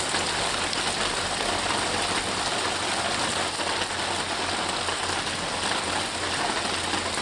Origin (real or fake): real